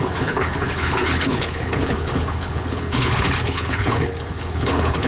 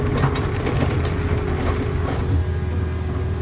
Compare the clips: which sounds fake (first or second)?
first